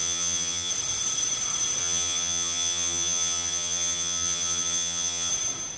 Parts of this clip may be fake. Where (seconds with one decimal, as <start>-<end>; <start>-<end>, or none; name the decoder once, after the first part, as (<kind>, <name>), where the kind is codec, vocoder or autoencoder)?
0.0-0.7 (vocoder, HiFi-GAN); 1.8-5.3